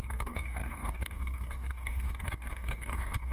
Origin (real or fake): fake